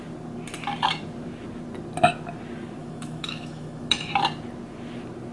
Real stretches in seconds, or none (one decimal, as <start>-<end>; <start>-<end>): 0.0-2.8; 4.1-5.3